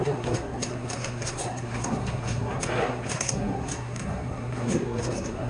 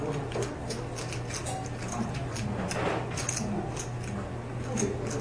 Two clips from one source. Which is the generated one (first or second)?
first